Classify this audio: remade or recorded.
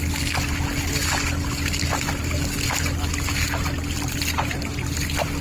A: recorded